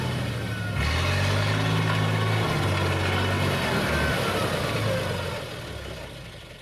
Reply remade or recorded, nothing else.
recorded